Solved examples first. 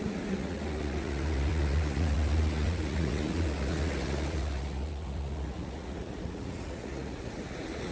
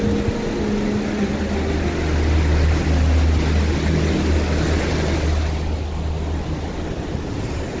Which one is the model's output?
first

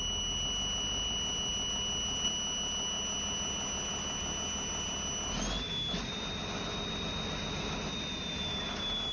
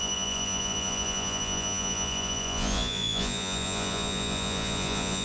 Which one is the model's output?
second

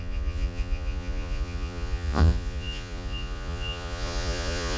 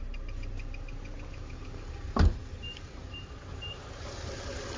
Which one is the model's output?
first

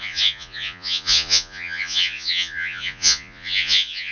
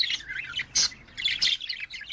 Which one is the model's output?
first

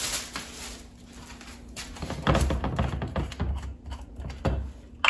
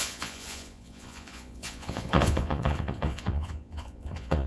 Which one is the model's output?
second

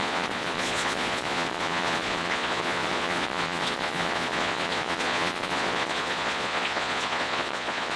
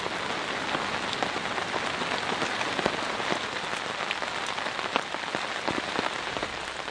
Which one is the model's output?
first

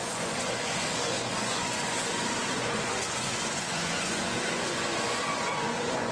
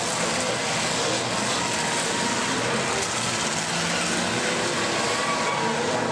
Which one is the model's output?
first